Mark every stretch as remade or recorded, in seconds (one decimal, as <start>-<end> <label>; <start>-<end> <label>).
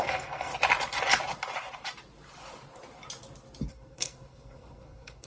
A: 0.0-0.5 remade; 0.5-3.7 recorded; 3.7-5.3 remade